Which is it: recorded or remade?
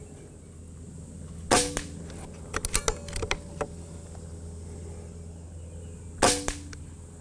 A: recorded